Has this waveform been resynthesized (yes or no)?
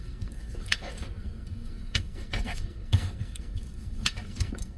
yes